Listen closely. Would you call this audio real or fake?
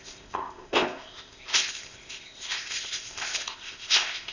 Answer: fake